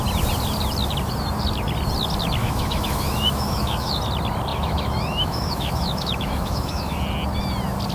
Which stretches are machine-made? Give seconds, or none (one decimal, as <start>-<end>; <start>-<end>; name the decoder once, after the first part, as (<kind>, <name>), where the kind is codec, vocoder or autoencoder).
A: 2.4-4.0 (autoencoder, DAC-VAE); 4.5-7.0

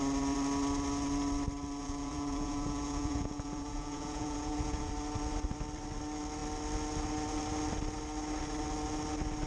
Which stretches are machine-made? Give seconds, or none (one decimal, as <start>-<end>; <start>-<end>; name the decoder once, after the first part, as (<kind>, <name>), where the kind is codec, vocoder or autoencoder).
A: 1.8-4.9 (vocoder, Vocos)

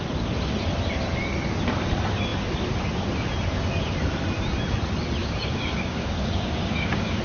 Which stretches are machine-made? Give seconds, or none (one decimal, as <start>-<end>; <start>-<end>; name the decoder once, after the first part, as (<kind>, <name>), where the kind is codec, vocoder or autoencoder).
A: 5.2-7.2 (codec, DAC)

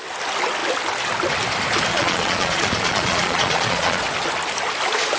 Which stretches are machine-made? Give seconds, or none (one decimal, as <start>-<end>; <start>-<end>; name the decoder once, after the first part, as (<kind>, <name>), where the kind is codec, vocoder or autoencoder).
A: 1.9-4.0 (vocoder, Vocos)

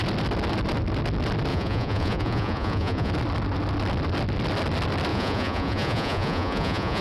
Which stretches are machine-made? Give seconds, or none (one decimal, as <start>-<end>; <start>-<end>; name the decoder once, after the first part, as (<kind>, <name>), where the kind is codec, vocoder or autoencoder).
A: 1.5-3.1 (vocoder, Vocos); 5.1-7.0

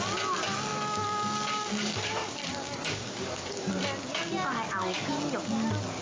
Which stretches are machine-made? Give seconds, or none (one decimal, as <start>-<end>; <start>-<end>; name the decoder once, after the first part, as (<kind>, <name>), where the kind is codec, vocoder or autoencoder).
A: 0.7-3.7 (codec, DAC); 4.5-5.0